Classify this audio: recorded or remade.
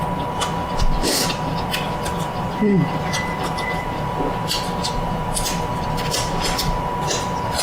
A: remade